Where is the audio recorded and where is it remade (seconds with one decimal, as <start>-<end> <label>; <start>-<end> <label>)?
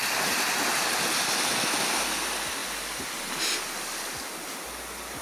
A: 0.0-5.2 recorded